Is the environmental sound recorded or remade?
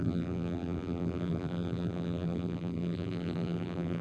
remade